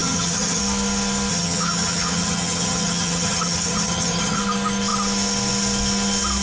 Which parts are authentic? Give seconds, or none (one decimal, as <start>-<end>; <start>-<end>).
0.6-1.3; 4.4-6.4